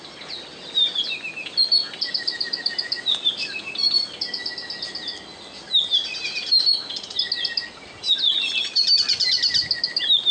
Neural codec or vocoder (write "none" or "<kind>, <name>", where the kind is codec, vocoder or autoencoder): none